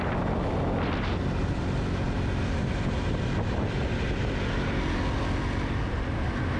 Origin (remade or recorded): recorded